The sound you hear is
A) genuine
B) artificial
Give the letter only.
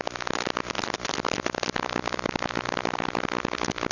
A